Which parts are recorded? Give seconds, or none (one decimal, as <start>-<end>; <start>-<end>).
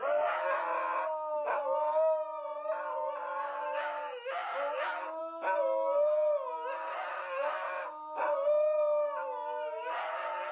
0.0-10.5